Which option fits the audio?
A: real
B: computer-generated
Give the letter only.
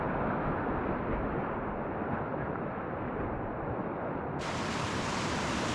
A